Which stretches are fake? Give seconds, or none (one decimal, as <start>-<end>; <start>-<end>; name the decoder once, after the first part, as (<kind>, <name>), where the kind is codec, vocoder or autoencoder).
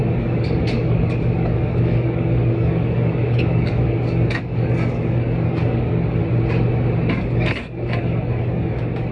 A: 0.0-6.2 (codec, DAC); 7.1-9.1